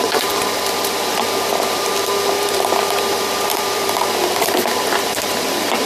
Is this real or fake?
fake